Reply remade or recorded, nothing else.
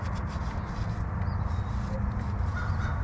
recorded